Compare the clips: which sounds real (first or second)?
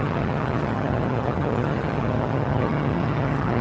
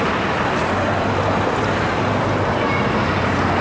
second